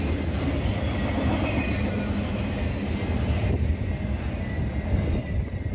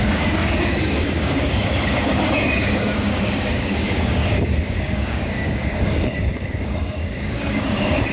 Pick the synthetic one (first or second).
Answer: second